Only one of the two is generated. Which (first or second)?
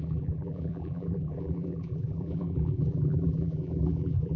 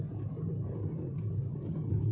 first